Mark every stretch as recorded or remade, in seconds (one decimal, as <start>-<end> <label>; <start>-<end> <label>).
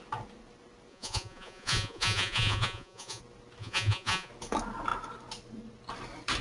0.0-0.9 recorded; 0.9-3.2 remade; 3.2-3.6 recorded; 3.6-4.3 remade; 4.3-6.4 recorded